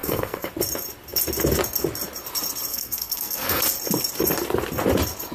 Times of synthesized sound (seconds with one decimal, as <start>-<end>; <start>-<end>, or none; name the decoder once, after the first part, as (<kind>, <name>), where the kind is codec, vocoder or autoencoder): 0.0-0.5 (codec, SNAC); 2.7-3.6